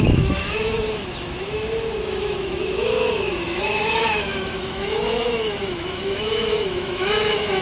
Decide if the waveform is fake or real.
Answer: fake